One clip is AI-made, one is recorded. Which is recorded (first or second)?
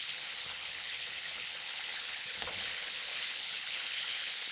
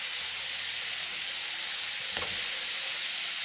second